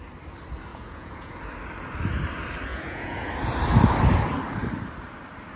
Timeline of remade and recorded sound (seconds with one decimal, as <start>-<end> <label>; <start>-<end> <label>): 0.0-0.7 recorded; 0.7-1.4 remade; 1.4-2.7 recorded; 2.7-3.3 remade; 3.3-5.6 recorded